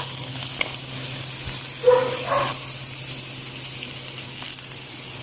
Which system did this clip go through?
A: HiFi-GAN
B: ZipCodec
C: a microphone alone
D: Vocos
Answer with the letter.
C